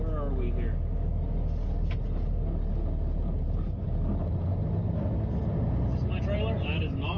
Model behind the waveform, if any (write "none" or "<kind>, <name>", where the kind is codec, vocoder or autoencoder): none